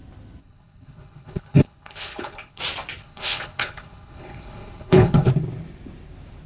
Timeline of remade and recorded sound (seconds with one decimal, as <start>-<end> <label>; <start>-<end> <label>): 0.0-0.4 recorded; 0.4-2.6 remade; 2.6-3.0 recorded; 3.0-5.3 remade; 5.3-6.5 recorded